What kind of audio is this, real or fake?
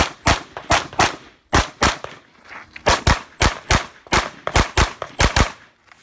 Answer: real